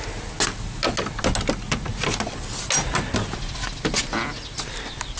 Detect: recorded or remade recorded